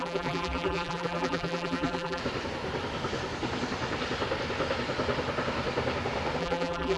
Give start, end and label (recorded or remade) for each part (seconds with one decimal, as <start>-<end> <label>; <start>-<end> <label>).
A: 0.0-2.2 remade; 2.2-6.4 recorded; 6.4-7.0 remade